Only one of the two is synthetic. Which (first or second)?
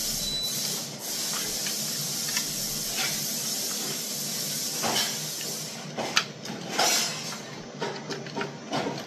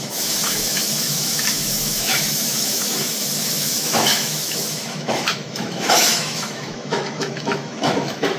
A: second